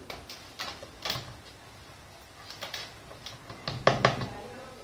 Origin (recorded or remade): recorded